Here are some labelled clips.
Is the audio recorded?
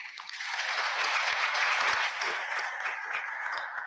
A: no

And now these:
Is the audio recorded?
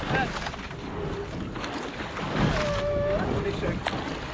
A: yes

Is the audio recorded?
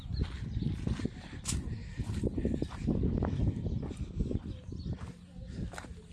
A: yes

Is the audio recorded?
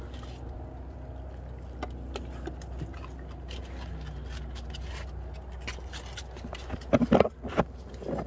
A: yes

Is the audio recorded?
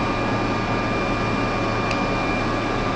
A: yes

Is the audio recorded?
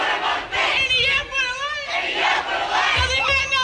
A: yes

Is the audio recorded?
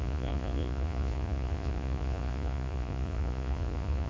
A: no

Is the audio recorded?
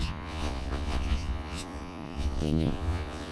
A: no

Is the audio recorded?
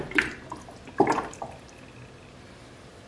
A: yes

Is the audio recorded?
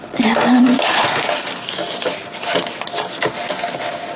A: yes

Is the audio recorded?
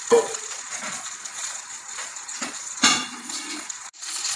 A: no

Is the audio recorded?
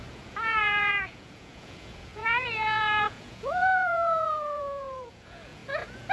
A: no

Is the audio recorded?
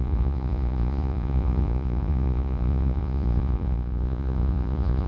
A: no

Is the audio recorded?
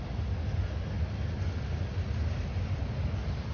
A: yes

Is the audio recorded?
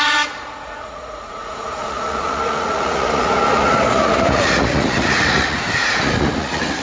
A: no